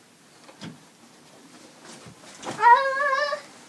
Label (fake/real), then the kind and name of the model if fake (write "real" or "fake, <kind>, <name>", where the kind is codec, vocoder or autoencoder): real